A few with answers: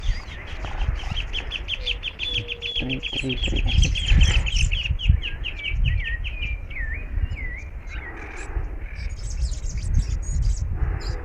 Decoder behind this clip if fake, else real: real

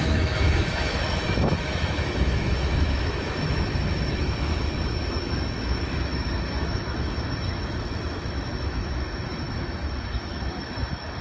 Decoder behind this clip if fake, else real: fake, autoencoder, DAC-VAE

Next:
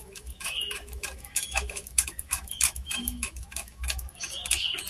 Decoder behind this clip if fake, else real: fake, autoencoder, DAC-VAE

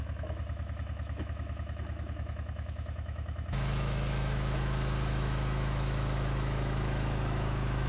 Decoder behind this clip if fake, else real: fake, autoencoder, DAC-VAE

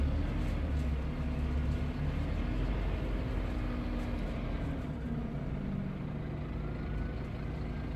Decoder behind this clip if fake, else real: real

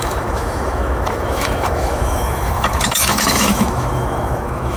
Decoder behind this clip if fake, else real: fake, autoencoder, DAC-VAE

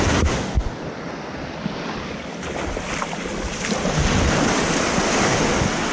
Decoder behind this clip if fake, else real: real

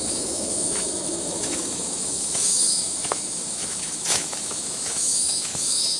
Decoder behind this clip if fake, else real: fake, autoencoder, DAC-VAE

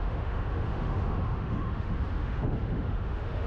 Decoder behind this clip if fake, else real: fake, autoencoder, DAC-VAE